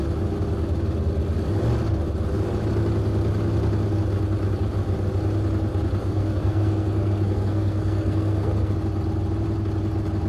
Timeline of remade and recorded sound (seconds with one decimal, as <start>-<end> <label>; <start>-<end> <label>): 0.0-6.0 recorded; 6.0-8.7 remade; 8.7-10.3 recorded